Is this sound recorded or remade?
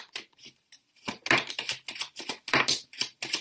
remade